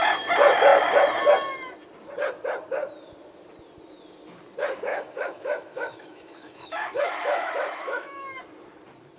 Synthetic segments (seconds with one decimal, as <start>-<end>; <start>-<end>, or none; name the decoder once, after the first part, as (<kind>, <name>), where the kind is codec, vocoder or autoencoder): 4.9-8.4 (autoencoder, DAC-VAE)